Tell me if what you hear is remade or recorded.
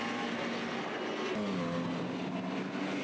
recorded